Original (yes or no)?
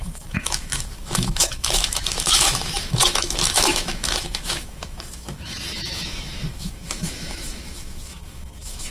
no